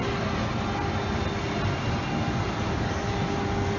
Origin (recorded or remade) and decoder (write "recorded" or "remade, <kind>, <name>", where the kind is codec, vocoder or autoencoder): recorded